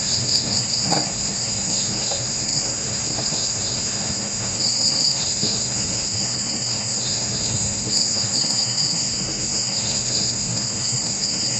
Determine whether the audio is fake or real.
fake